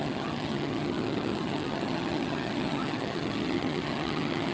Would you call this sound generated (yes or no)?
yes